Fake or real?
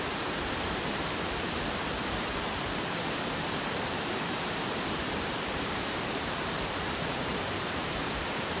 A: fake